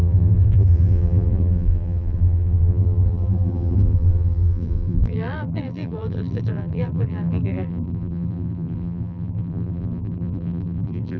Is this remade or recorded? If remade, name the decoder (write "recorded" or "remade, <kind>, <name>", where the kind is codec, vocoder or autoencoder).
remade, vocoder, BigVGAN v2